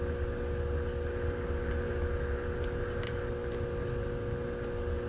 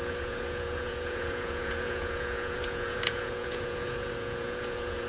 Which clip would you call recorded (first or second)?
first